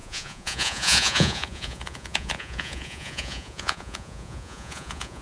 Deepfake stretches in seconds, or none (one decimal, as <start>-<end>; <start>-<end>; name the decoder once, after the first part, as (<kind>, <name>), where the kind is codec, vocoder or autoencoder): 0.0-5.2 (vocoder, Vocos)

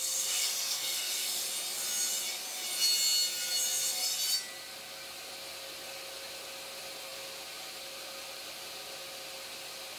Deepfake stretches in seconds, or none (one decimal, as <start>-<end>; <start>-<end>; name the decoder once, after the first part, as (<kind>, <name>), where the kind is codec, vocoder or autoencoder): 0.0-1.5 (codec, SNAC)

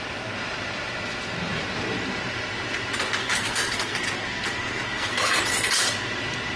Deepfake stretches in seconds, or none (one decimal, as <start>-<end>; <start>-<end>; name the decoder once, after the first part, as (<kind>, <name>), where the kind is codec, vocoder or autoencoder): 3.2-5.4 (codec, SNAC)

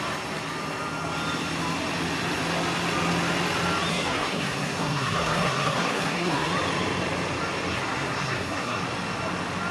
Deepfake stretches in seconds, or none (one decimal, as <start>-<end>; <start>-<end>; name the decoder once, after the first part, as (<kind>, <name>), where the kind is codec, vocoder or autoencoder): 3.9-6.5 (codec, SNAC); 7.7-8.8

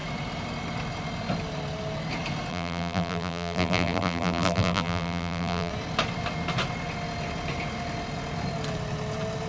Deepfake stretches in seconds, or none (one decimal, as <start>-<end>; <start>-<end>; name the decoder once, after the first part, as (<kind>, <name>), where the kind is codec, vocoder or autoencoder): 2.5-5.7 (vocoder, BigVGAN v2)

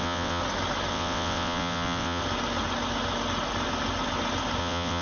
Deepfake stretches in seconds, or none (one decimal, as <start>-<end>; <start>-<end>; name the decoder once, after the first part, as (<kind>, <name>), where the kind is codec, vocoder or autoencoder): 0.0-0.4 (vocoder, WaveNeXt); 0.9-2.2; 4.6-5.0

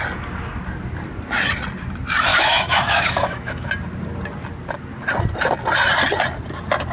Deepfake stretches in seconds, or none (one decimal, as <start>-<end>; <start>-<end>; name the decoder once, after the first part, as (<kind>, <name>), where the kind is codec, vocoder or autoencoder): 2.3-3.7 (autoencoder, DAC-VAE)

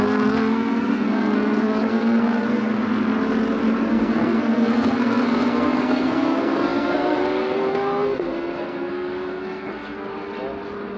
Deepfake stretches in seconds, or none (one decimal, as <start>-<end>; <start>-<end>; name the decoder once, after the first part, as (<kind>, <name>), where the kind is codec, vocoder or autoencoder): 0.0-2.8 (codec, SNAC); 3.9-10.1